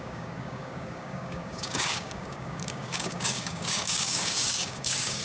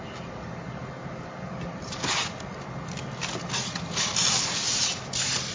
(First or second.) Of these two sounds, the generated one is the first